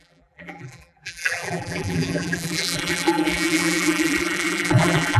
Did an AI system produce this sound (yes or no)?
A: yes